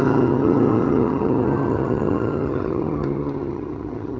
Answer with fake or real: fake